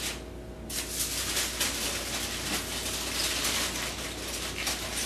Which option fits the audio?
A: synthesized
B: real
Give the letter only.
B